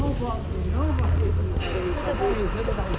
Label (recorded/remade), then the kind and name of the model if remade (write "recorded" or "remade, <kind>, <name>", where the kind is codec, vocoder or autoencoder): recorded